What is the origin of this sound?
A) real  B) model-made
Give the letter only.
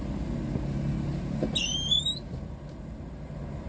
A